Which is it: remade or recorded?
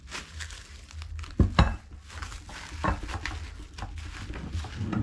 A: recorded